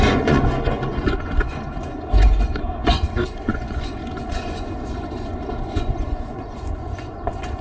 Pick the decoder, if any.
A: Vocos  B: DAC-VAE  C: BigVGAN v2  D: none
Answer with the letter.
A